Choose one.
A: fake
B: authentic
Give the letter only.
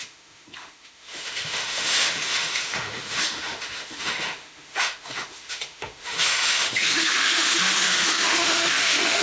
A